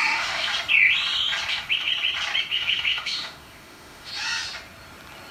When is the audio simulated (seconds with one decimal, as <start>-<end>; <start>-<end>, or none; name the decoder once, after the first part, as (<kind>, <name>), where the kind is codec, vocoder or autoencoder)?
0.0-0.5 (autoencoder, DAC-VAE); 1.5-1.9; 2.5-4.1